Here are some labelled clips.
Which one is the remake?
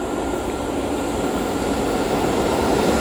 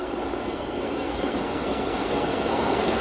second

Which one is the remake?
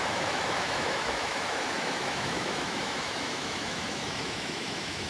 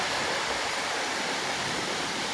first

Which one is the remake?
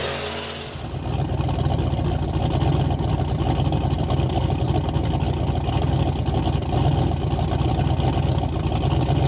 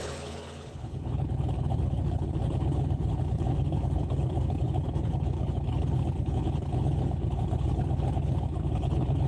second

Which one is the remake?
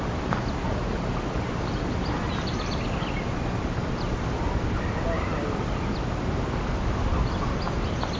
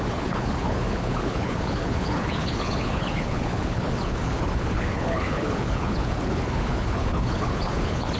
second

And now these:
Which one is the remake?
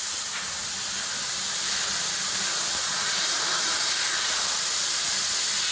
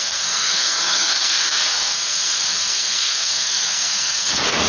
second